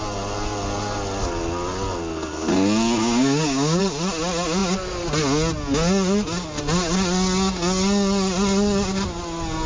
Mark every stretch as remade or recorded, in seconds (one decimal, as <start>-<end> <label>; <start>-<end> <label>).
0.0-3.0 recorded; 3.0-3.8 remade; 3.8-9.7 recorded